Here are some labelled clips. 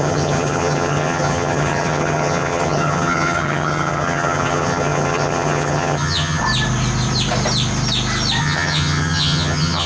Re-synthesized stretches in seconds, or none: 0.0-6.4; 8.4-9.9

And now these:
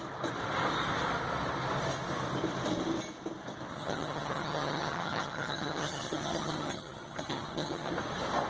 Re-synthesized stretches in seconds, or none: 3.7-7.9

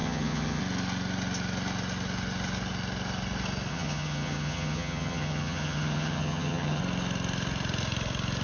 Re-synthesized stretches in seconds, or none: 0.0-0.6; 3.7-6.8

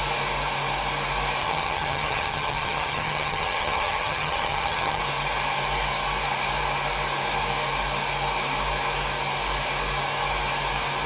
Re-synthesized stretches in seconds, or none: 1.4-5.0

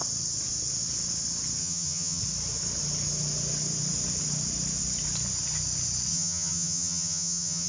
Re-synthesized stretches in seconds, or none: 1.6-2.2; 6.1-7.7

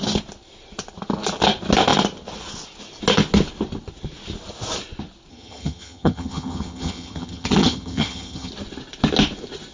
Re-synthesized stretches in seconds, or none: 5.3-8.5